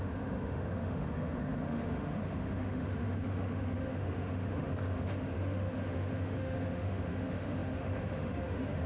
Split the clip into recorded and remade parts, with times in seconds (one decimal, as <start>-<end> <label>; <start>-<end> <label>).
0.0-8.9 remade